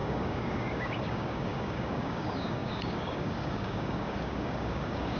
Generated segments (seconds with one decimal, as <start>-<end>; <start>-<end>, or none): 0.0-5.2